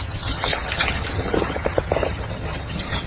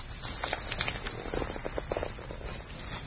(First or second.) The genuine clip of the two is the second